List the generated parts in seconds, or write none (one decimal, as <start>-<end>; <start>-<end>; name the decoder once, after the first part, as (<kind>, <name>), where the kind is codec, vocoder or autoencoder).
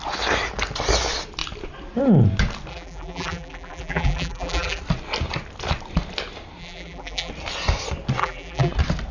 2.7-4.8 (vocoder, BigVGAN v2); 6.6-7.3; 8.2-8.7